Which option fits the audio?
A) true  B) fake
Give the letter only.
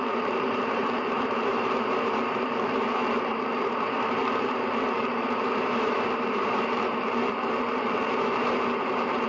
B